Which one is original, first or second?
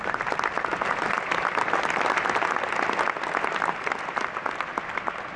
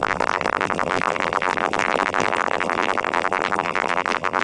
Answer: first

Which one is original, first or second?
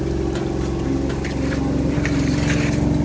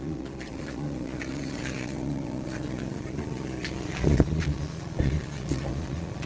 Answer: first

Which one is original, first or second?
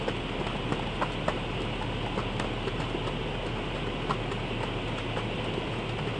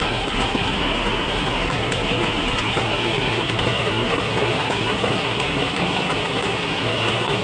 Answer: first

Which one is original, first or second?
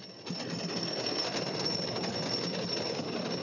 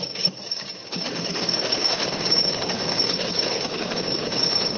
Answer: first